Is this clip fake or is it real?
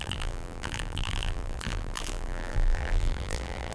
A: fake